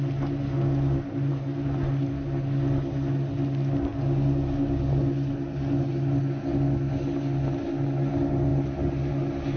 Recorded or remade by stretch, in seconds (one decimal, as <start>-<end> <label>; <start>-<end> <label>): 0.0-9.6 recorded